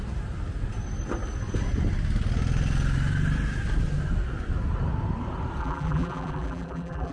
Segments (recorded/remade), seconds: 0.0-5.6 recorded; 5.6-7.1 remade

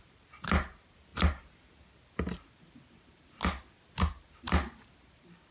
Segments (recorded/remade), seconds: 0.0-5.5 recorded

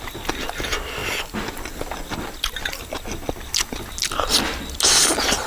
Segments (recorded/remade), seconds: 0.0-5.5 recorded